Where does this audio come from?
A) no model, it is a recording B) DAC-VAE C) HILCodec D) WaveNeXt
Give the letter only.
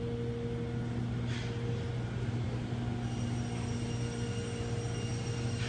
A